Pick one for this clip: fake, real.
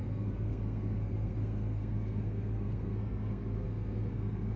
fake